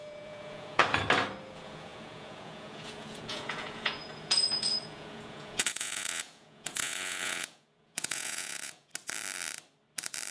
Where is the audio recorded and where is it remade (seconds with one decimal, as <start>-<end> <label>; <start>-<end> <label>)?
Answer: 0.0-0.8 remade; 0.8-1.4 recorded; 1.4-8.9 remade; 8.9-10.3 recorded